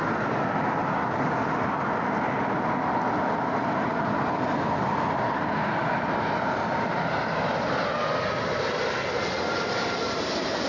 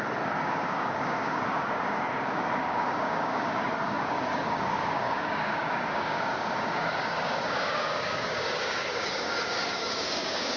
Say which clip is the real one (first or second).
first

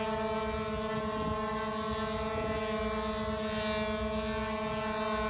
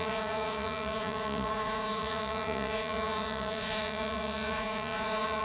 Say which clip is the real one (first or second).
first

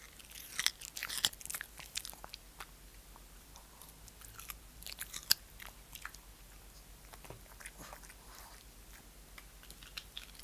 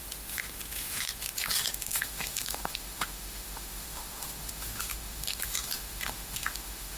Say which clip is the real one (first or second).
first